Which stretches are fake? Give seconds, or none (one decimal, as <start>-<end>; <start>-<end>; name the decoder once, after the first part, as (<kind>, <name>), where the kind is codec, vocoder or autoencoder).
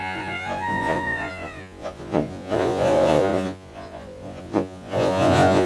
0.0-5.7 (vocoder, Vocos)